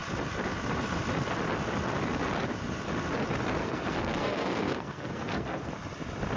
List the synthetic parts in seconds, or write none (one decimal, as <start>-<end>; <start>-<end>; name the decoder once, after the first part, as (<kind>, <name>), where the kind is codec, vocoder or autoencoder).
3.6-5.7 (codec, SNAC)